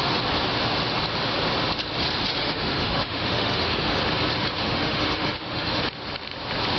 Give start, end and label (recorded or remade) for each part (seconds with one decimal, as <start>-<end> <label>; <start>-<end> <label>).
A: 0.0-2.4 recorded; 2.4-4.0 remade; 4.0-4.6 recorded; 4.6-5.8 remade; 5.8-6.8 recorded

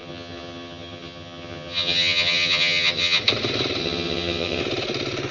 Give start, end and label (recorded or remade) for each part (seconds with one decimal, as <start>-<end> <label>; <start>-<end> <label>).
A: 0.0-3.2 remade; 3.2-3.8 recorded; 3.8-4.6 remade; 4.6-5.3 recorded

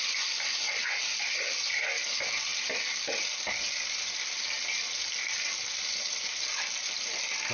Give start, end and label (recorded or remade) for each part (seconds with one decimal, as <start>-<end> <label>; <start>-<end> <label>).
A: 0.0-7.5 recorded

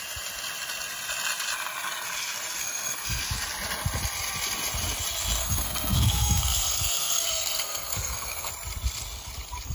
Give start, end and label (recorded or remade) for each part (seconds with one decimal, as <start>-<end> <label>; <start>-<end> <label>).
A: 0.0-2.6 recorded; 2.6-3.2 remade; 3.2-5.4 recorded; 5.4-8.5 remade; 8.5-9.7 recorded

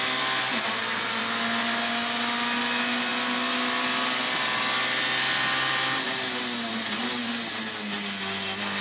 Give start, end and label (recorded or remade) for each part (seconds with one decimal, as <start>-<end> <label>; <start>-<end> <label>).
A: 0.0-0.4 recorded; 0.4-1.2 remade; 1.2-8.8 recorded

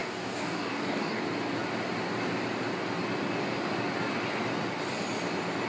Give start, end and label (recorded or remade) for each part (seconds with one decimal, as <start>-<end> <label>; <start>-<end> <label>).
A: 0.0-1.2 remade; 1.2-5.7 recorded

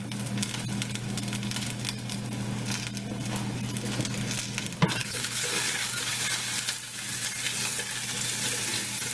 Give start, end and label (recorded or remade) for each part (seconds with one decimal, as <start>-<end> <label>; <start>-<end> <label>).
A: 0.0-5.0 recorded; 5.0-6.1 remade; 6.1-9.1 recorded